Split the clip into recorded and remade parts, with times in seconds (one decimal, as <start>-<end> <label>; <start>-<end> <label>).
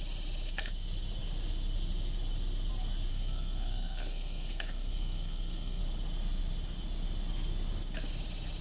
0.0-3.1 recorded; 3.1-5.8 remade; 5.8-8.6 recorded